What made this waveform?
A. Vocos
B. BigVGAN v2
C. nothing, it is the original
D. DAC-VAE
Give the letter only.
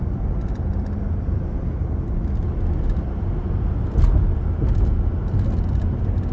C